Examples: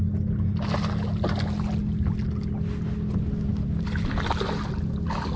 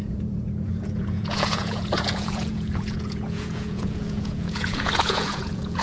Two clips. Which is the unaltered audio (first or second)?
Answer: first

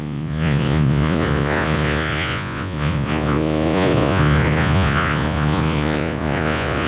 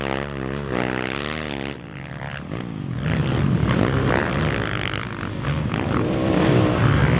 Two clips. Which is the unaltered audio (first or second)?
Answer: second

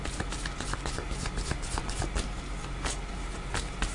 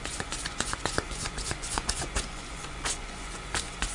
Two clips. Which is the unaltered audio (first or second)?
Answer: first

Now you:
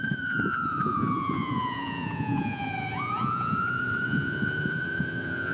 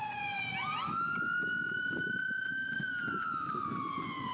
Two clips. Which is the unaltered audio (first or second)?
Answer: second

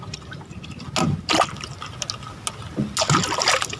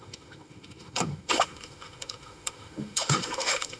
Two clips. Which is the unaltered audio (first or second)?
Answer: first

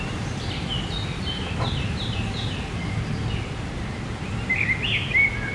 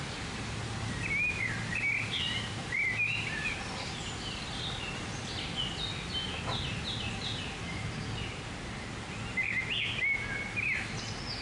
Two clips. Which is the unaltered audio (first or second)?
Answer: second